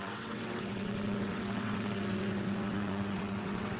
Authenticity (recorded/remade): remade